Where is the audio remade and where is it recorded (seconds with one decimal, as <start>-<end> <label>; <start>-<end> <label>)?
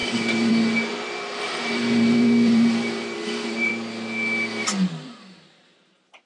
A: 0.0-0.5 remade; 0.5-0.9 recorded; 0.9-3.7 remade; 3.7-4.6 recorded; 4.6-5.8 remade; 5.8-6.2 recorded